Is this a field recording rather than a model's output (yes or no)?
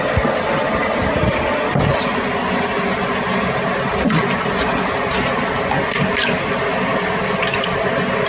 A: yes